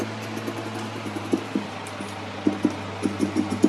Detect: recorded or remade recorded